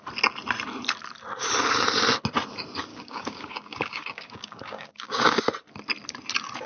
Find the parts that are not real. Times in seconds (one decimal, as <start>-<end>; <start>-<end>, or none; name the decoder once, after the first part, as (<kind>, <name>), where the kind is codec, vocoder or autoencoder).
2.9-5.4 (codec, DAC)